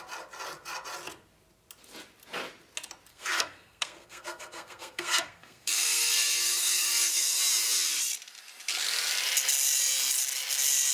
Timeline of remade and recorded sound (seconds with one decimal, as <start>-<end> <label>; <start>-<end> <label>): 0.0-3.1 recorded; 3.1-7.4 remade; 7.4-10.9 recorded